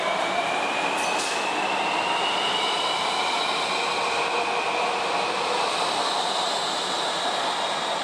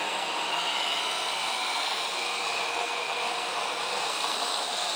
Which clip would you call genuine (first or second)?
first